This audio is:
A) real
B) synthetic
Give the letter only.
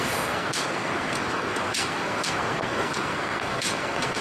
B